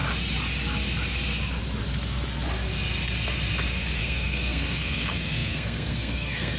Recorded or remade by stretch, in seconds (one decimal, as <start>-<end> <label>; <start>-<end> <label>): 0.0-4.0 recorded; 4.0-6.6 remade